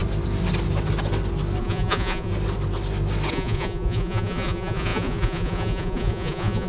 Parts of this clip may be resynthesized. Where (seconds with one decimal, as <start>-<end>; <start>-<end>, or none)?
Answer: 1.6-2.3; 3.3-6.7